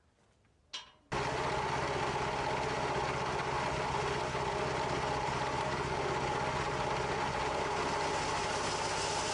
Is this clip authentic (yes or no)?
yes